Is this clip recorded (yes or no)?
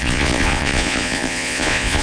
no